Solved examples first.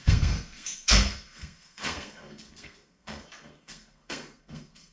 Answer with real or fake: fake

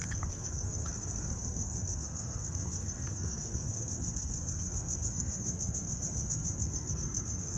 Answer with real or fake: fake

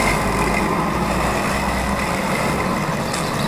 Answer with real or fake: real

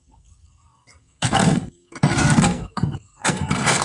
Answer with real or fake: fake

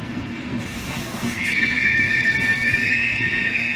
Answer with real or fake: fake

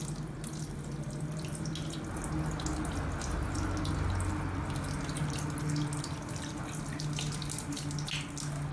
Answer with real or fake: real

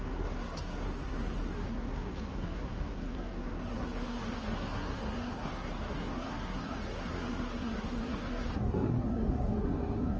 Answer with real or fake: fake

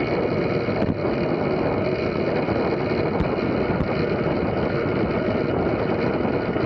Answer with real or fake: real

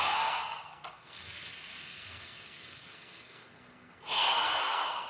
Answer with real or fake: fake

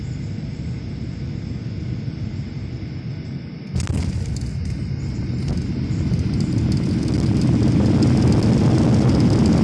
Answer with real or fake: real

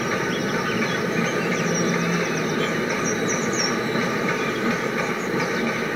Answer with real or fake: real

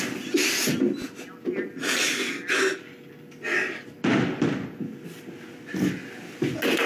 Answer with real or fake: real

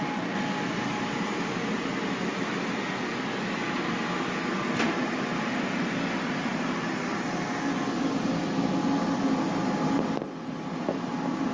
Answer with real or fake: real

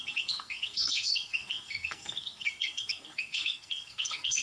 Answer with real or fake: fake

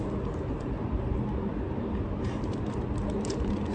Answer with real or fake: real